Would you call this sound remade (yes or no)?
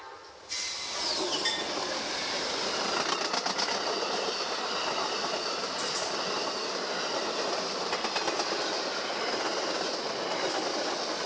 no